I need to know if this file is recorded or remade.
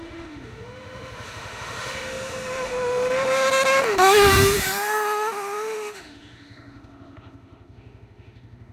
remade